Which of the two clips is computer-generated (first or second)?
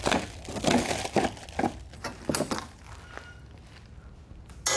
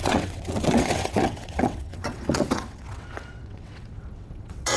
second